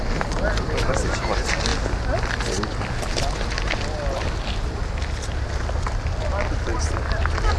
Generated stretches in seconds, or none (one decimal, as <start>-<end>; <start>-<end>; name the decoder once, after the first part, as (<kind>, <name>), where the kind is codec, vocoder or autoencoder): 0.0-1.7 (vocoder, BigVGAN v2); 5.8-7.6